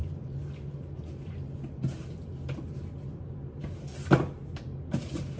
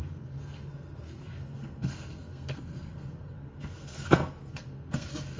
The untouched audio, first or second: first